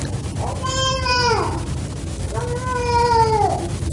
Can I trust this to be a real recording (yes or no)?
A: yes